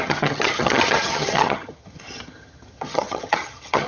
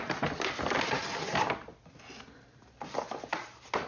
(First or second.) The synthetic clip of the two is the first